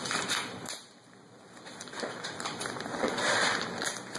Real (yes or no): no